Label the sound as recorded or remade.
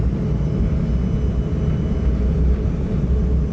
recorded